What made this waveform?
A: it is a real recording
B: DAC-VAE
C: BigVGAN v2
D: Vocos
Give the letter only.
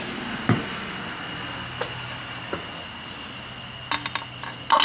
A